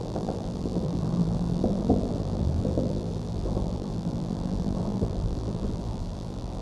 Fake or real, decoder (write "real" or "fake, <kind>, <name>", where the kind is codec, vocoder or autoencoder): fake, vocoder, BigVGAN v2